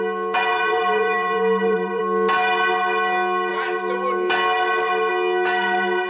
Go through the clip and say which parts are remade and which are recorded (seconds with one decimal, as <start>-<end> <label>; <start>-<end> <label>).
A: 0.0-0.5 recorded; 0.5-2.0 remade; 2.0-6.1 recorded